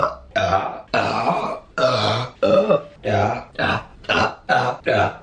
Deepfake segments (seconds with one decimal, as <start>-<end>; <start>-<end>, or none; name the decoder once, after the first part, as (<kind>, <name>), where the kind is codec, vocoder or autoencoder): 0.7-1.6 (vocoder, BigVGAN v2); 3.9-4.5